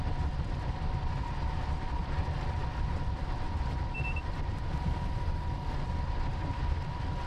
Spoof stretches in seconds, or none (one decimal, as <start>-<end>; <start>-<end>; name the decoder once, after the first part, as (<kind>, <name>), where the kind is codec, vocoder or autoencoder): none